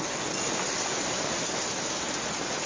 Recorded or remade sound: recorded